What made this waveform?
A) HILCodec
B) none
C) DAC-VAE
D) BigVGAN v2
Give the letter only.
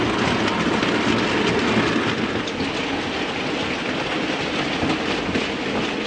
B